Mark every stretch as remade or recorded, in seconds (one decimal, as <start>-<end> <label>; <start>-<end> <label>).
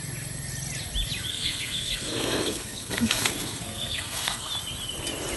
0.0-1.3 recorded; 1.3-4.5 remade; 4.5-5.4 recorded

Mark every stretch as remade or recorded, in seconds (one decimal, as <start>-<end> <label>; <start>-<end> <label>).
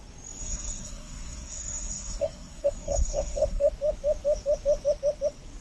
0.0-0.4 recorded; 0.4-3.7 remade; 3.7-5.6 recorded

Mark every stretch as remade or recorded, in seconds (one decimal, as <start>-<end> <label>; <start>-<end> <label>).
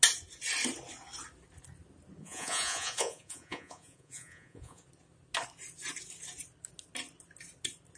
0.0-2.2 recorded; 2.2-4.8 remade; 4.8-8.0 recorded